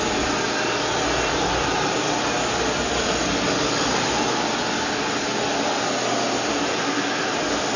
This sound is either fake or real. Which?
real